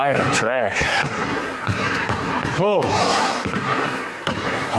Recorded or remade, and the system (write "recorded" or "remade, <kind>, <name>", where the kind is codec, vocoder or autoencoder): remade, codec, SNAC